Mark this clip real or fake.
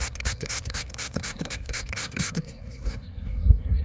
fake